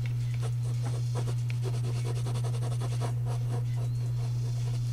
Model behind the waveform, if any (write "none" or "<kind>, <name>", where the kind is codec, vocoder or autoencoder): none